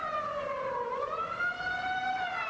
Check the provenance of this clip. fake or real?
fake